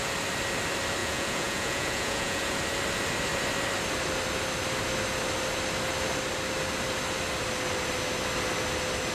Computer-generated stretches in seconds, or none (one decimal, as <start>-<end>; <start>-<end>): 1.0-2.5